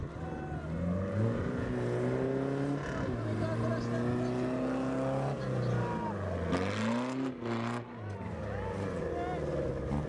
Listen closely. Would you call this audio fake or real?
real